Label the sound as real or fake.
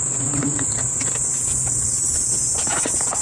real